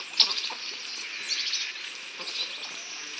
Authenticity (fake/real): real